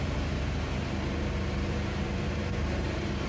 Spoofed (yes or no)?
yes